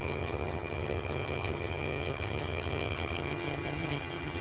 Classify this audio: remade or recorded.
remade